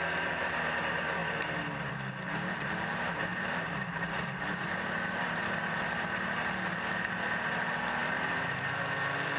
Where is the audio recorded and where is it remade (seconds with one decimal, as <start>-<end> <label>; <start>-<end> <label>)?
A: 0.0-3.3 recorded; 3.3-5.4 remade; 5.4-8.0 recorded; 8.0-8.7 remade; 8.7-9.4 recorded